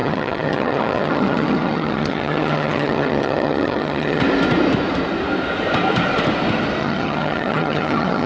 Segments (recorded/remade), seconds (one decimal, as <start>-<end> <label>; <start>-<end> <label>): 0.0-4.2 remade; 4.2-6.8 recorded; 6.8-8.3 remade